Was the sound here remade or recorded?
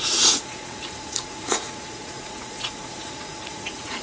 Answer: remade